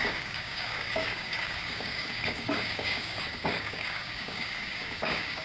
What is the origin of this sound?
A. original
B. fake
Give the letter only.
B